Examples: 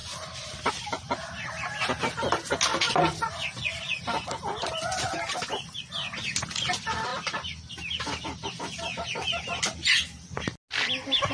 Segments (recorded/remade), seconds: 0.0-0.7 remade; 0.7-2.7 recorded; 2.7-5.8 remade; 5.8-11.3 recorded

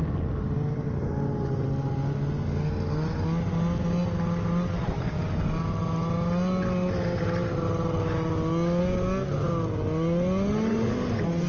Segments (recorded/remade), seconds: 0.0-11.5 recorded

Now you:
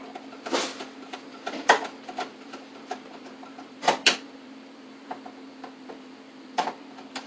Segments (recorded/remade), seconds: 0.0-0.7 recorded; 0.7-5.1 remade; 5.1-5.5 recorded; 5.5-7.3 remade